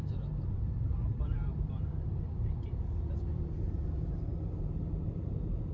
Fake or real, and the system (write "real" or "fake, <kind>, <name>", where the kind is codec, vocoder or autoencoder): fake, vocoder, BigVGAN v2